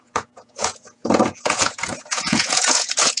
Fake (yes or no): yes